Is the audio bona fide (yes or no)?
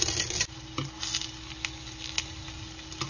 yes